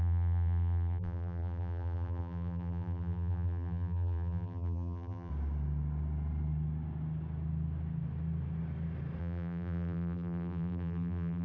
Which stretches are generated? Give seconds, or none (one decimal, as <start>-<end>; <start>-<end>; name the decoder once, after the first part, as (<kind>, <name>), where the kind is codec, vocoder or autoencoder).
0.0-5.3 (vocoder, BigVGAN v2); 9.2-11.4